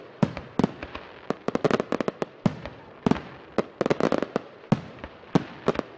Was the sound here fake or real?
real